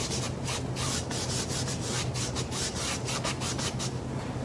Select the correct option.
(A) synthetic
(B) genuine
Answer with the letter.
B